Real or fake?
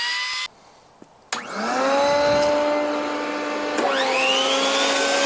real